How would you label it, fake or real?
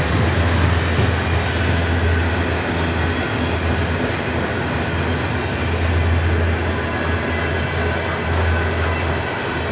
real